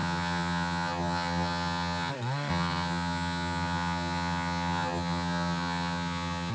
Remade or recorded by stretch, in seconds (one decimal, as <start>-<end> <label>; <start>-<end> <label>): 0.0-2.1 remade; 2.1-2.5 recorded; 2.5-6.5 remade